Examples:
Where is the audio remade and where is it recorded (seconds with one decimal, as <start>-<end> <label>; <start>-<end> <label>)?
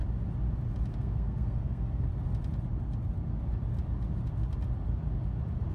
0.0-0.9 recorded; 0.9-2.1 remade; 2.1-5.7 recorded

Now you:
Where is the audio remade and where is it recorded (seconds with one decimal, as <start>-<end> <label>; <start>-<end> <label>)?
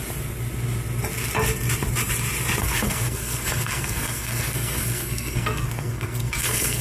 0.0-2.6 recorded; 2.6-6.8 remade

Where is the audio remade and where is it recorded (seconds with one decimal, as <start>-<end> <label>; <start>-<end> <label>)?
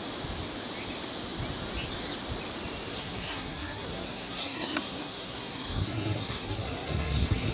0.0-2.9 recorded; 2.9-7.5 remade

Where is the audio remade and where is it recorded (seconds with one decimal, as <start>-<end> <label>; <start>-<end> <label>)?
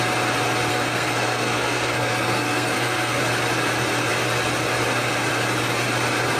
0.0-0.7 recorded; 0.7-3.2 remade; 3.2-6.4 recorded